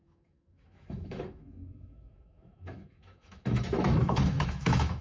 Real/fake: fake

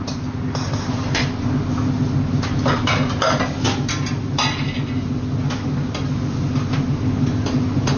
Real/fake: real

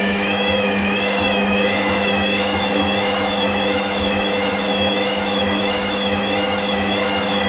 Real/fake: fake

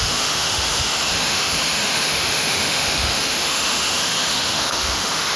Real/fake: fake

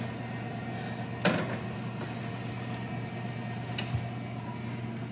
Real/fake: real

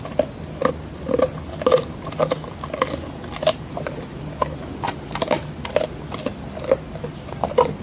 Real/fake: real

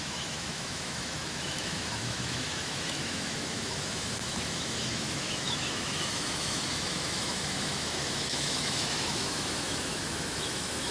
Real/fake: fake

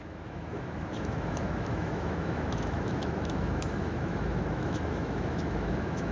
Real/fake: fake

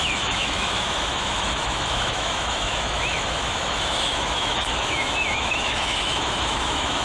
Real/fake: fake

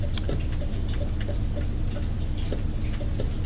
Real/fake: real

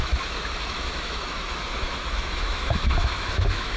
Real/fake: fake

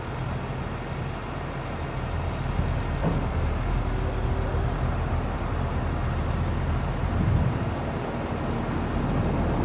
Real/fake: real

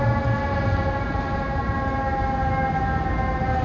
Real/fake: real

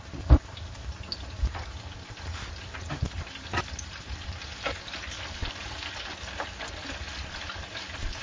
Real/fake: real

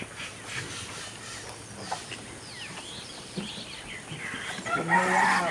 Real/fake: real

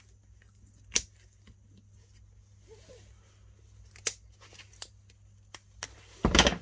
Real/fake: real